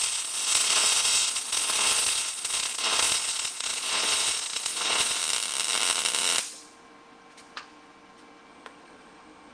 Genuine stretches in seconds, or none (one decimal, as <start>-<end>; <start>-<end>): 5.2-8.5